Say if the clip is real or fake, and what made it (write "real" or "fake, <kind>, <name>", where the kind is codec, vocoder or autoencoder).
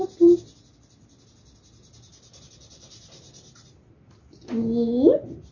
real